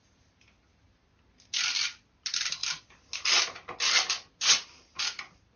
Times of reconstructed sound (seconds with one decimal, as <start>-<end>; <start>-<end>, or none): none